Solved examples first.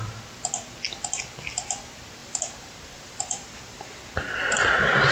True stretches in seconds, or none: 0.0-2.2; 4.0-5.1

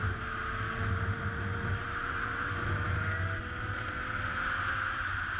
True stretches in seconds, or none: 0.0-1.8; 3.4-5.4

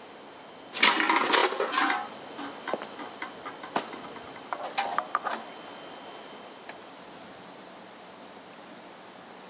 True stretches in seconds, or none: 0.0-9.5

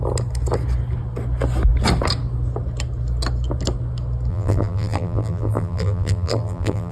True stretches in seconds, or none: 0.0-4.3

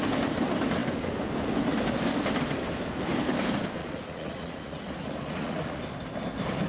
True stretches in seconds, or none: 0.0-3.8; 5.8-6.7

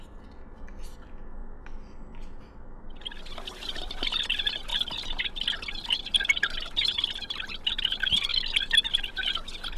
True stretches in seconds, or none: 0.0-9.8

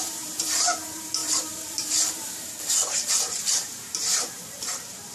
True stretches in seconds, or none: none

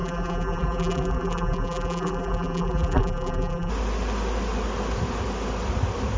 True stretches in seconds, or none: 3.7-6.2